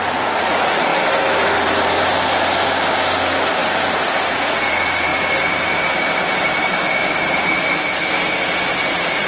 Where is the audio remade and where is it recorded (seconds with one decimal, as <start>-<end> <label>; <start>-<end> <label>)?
0.0-0.9 remade; 0.9-4.3 recorded; 4.3-5.1 remade; 5.1-8.9 recorded; 8.9-9.3 remade